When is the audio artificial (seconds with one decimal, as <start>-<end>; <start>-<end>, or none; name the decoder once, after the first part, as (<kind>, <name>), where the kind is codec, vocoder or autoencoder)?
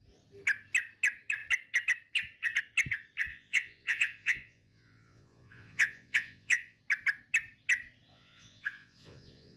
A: 3.3-6.8 (vocoder, Vocos); 8.1-9.6